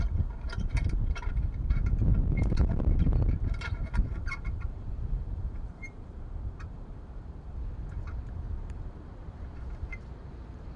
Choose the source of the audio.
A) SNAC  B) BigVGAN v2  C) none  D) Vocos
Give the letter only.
B